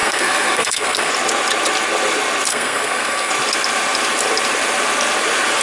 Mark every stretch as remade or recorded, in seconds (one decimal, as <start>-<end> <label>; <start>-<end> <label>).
0.0-1.1 remade; 1.1-2.5 recorded; 2.5-3.3 remade; 3.3-5.6 recorded